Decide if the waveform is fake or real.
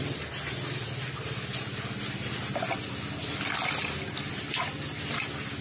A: real